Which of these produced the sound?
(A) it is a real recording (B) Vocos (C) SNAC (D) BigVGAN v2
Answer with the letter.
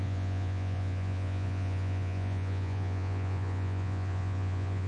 B